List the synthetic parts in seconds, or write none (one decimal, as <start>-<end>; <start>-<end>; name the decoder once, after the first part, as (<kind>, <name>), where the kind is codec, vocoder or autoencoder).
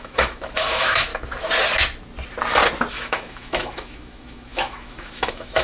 0.0-1.1 (autoencoder, DAC-VAE); 2.9-5.6